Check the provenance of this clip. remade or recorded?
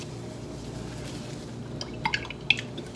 recorded